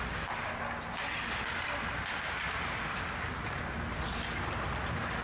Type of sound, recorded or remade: recorded